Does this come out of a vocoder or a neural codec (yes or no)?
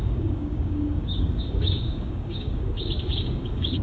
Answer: yes